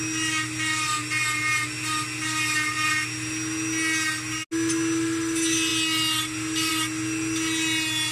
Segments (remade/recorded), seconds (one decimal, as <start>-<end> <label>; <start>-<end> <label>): 0.0-8.1 recorded